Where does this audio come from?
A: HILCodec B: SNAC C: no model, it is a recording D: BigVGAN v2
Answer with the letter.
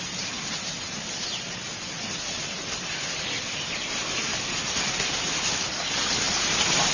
C